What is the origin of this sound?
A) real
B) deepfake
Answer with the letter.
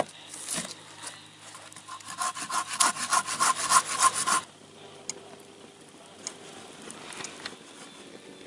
A